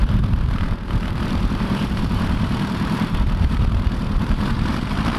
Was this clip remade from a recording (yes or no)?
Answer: yes